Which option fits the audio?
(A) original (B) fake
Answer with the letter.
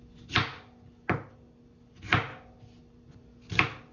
A